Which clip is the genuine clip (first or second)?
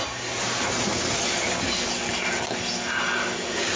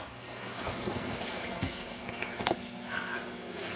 first